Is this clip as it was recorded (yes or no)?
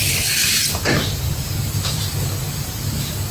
yes